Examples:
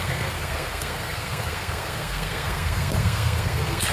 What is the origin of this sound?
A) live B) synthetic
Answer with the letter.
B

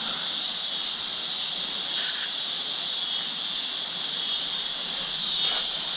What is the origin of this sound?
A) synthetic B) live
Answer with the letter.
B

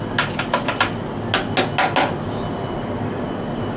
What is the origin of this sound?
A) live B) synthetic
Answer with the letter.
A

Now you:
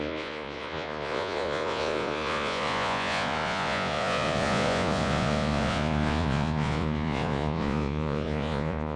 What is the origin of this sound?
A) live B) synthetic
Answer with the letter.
B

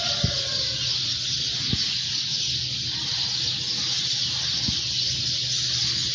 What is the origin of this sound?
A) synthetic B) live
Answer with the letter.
B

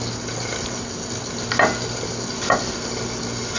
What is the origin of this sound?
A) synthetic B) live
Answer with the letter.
B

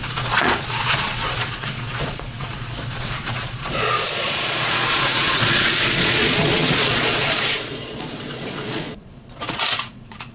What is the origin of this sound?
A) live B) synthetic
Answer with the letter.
B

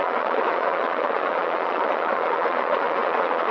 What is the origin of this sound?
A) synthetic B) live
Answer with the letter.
A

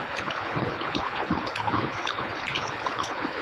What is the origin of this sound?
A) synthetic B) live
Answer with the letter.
A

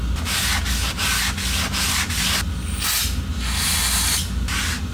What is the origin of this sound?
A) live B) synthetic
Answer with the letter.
A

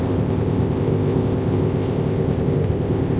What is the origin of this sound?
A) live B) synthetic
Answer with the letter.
B